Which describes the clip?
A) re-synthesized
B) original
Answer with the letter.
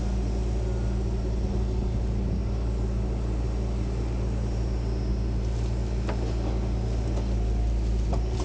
B